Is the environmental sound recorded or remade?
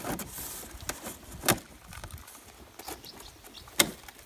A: recorded